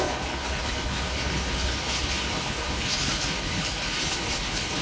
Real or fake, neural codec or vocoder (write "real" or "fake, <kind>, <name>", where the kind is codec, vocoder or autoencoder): fake, codec, HILCodec